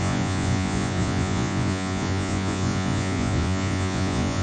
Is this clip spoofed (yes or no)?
yes